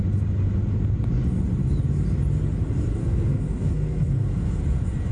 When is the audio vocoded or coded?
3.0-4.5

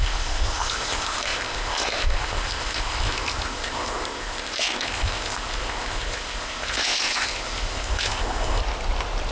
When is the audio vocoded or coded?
0.0-8.6

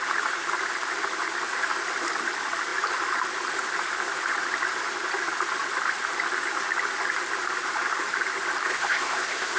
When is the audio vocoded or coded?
8.7-9.6

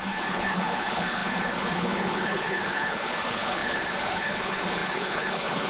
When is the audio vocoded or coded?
0.0-5.7

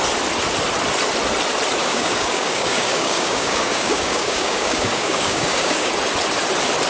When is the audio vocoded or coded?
1.8-5.9

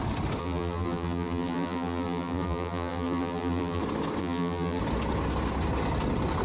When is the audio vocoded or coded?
0.4-3.8; 4.2-4.8

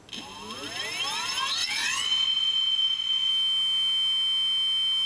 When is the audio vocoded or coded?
1.6-3.3